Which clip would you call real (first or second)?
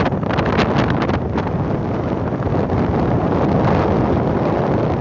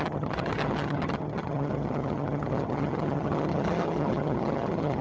first